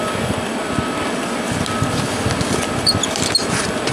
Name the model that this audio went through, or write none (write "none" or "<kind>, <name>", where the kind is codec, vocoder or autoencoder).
none